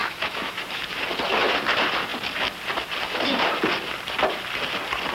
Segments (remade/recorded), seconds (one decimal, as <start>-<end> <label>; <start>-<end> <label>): 0.0-0.6 remade; 0.6-5.1 recorded